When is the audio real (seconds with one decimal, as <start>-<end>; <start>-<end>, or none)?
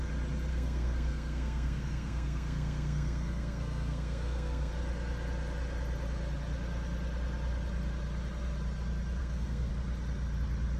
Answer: 0.0-0.5; 4.7-9.2; 9.7-10.8